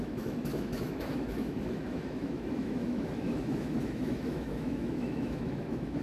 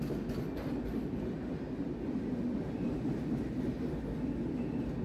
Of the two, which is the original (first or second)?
second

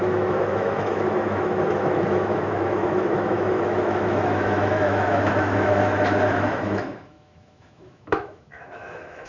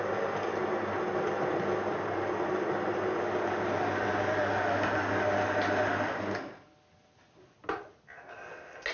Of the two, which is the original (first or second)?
second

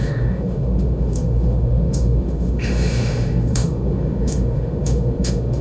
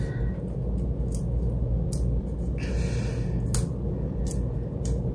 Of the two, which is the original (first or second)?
second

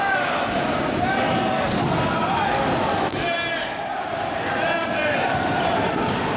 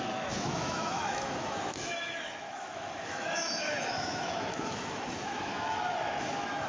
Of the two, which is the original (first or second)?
first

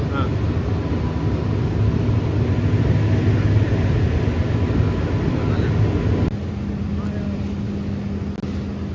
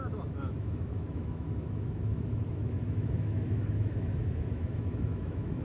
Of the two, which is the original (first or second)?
first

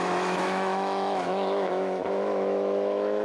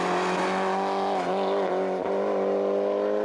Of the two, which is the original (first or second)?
second